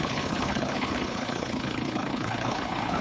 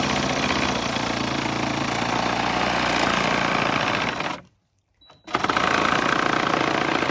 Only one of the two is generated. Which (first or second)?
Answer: first